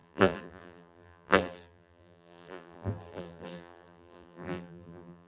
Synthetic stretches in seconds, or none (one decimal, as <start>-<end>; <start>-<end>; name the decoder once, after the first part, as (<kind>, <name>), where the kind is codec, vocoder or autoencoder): 0.0-5.3 (vocoder, BigVGAN v2)